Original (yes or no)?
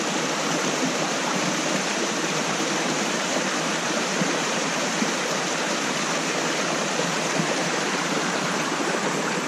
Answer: no